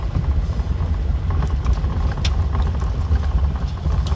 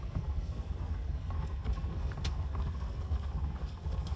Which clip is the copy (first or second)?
second